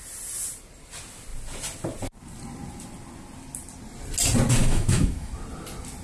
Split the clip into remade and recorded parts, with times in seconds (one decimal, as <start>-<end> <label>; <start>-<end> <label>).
0.0-4.6 recorded; 4.6-5.3 remade; 5.3-6.0 recorded